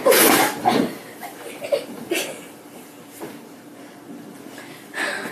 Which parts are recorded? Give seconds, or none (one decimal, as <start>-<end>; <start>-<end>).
0.0-0.6; 3.8-5.3